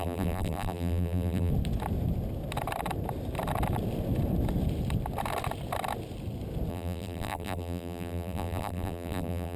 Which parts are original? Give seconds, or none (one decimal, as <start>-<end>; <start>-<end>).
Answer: 1.5-6.7